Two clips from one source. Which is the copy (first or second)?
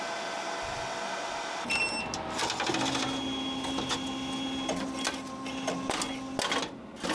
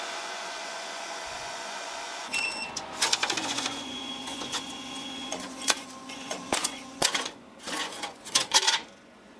second